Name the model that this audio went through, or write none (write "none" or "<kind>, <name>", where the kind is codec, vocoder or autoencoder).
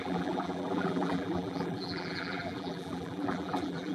vocoder, BigVGAN v2